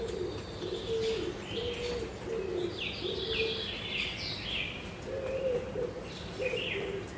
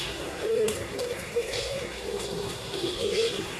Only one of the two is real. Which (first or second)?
first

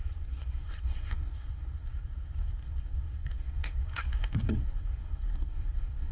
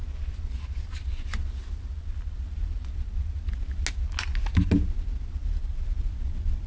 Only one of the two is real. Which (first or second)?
second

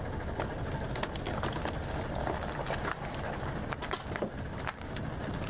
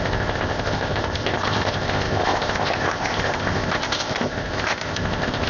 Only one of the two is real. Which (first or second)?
first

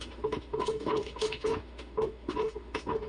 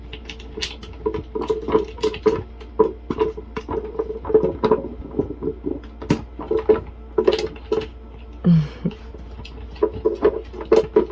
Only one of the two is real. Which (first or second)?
second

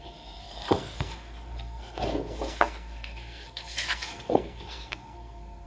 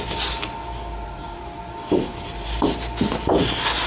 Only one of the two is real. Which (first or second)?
second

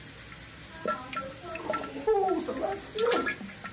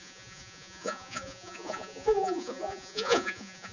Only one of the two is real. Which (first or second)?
first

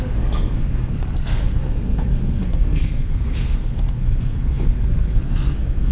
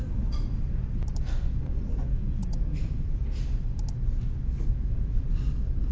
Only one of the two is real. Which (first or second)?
second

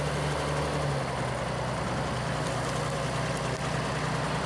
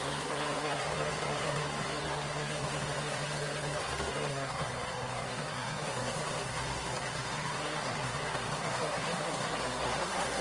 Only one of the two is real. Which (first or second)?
first